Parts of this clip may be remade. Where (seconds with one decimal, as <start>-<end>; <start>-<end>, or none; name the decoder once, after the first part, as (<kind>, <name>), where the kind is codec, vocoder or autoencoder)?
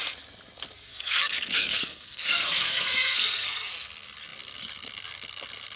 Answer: 0.9-3.7 (codec, SNAC)